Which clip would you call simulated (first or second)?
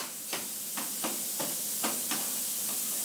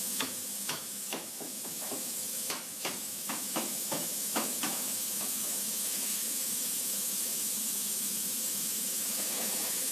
second